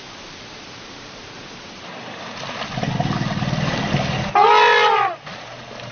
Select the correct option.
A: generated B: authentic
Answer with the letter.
B